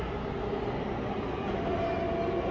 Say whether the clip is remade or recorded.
recorded